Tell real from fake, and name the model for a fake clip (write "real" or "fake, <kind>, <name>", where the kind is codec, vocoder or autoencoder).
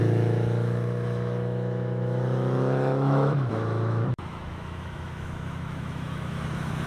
fake, autoencoder, DAC-VAE